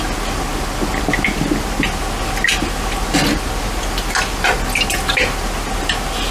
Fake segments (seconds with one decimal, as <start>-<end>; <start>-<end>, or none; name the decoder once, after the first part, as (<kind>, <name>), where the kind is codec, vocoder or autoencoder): none